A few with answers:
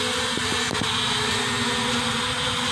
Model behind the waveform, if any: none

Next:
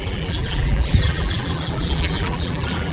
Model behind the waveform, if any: vocoder, BigVGAN v2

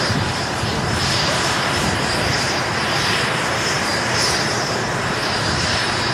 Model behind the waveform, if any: vocoder, BigVGAN v2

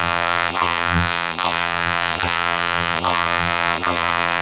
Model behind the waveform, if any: vocoder, BigVGAN v2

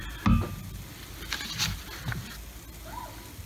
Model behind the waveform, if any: none